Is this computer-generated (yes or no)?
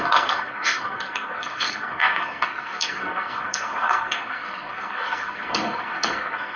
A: yes